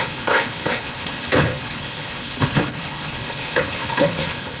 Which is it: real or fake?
fake